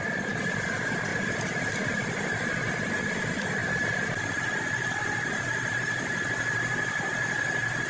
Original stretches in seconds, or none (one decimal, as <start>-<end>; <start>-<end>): 0.0-7.9